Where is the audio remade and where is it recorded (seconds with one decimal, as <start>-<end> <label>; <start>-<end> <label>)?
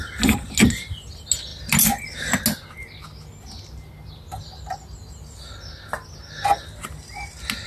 0.0-7.7 recorded